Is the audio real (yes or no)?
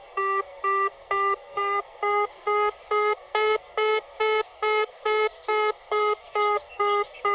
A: no